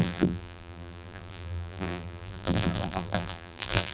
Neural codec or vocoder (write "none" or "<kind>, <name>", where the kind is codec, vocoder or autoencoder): vocoder, BigVGAN v2